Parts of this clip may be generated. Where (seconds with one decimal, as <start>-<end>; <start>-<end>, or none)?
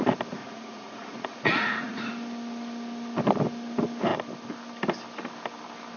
0.4-2.1